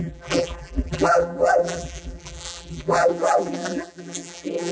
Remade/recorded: remade